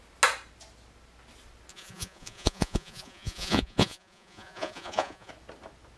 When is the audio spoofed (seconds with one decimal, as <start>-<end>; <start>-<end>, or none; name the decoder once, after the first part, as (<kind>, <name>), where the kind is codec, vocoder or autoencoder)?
1.7-5.3 (vocoder, Vocos)